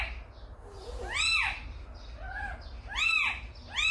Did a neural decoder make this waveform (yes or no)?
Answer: no